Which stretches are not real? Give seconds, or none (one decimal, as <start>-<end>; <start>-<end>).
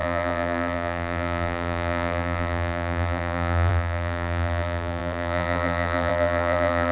0.0-6.9